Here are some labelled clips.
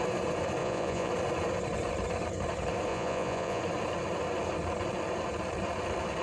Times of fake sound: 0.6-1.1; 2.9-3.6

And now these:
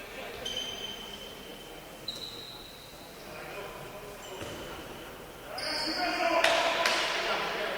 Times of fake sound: none

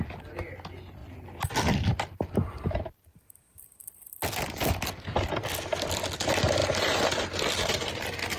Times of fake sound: 1.0-3.9

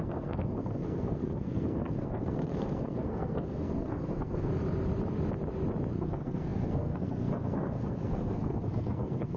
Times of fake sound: 0.0-4.5; 5.9-9.4

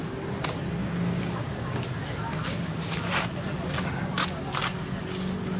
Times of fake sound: 0.8-1.9; 2.4-3.1